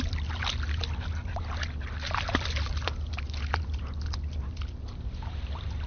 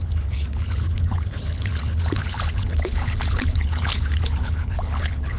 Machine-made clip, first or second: second